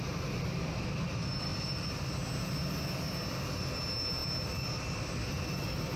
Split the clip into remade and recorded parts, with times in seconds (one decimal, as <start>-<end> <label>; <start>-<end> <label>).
0.0-6.0 recorded